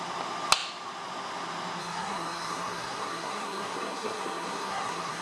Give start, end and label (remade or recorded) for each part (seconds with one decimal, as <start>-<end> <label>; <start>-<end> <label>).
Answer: 0.0-1.8 recorded; 1.8-5.2 remade